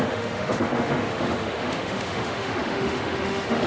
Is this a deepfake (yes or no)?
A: yes